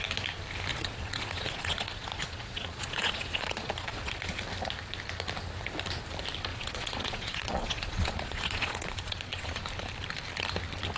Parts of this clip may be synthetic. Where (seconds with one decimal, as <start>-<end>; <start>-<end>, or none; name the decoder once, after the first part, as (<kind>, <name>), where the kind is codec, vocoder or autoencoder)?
0.7-4.4 (vocoder, Vocos); 6.5-9.6